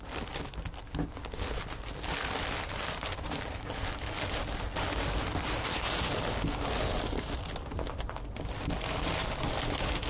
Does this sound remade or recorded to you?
recorded